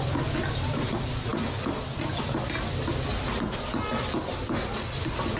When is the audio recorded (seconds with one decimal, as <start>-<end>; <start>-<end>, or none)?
0.0-5.4